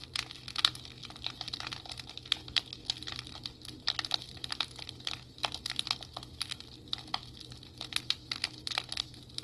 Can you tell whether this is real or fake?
real